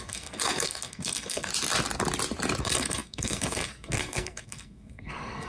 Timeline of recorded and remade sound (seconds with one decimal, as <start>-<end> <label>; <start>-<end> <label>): 0.0-1.5 remade; 1.5-2.6 recorded; 2.6-5.5 remade